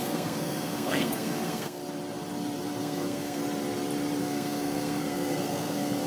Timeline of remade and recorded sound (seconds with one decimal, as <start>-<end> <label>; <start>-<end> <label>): 0.0-1.8 remade; 1.8-2.8 recorded; 2.8-3.4 remade; 3.4-4.2 recorded; 4.2-6.1 remade